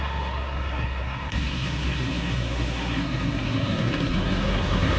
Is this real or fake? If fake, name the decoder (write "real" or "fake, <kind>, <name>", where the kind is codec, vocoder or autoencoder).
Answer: fake, codec, SNAC